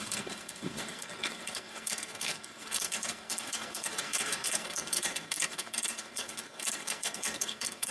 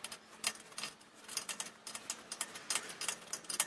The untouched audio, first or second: second